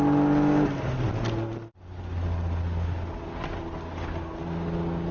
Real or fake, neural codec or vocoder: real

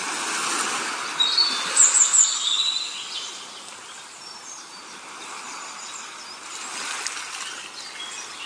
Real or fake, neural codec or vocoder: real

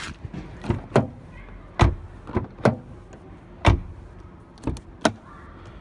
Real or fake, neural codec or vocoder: real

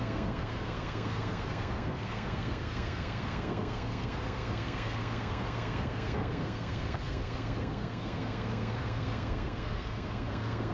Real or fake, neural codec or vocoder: fake, codec, SNAC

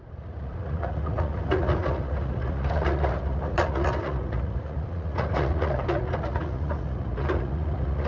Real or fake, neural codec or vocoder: fake, vocoder, Vocos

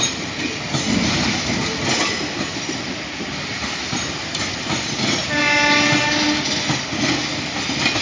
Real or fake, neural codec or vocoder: real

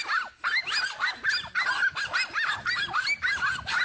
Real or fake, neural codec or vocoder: real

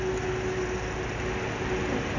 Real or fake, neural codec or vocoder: real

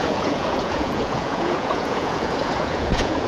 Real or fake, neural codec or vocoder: fake, vocoder, Vocos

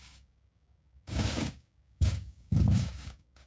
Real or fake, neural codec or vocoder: fake, codec, DAC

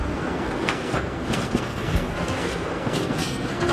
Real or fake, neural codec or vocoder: fake, codec, SNAC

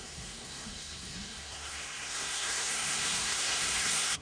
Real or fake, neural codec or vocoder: fake, codec, SNAC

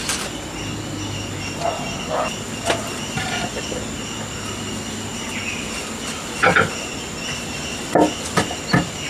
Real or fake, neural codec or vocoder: real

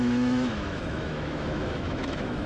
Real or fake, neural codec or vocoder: fake, autoencoder, DAC-VAE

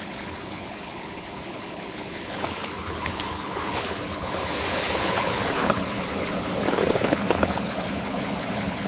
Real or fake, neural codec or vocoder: fake, codec, HILCodec